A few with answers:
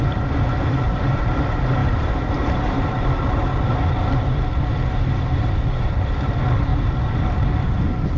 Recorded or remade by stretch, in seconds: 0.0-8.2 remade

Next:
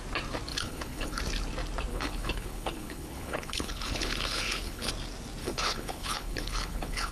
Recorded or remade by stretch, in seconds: 0.0-0.5 recorded; 0.5-1.2 remade; 1.2-1.9 recorded; 1.9-4.9 remade; 4.9-5.4 recorded; 5.4-7.1 remade

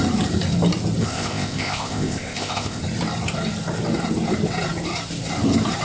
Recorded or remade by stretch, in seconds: 0.0-1.0 recorded; 1.0-2.8 remade; 2.8-5.8 recorded